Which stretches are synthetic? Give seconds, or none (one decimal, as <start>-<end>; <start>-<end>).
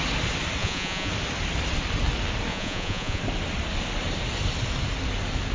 0.6-1.1; 2.5-3.2